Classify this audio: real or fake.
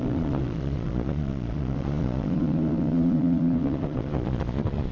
fake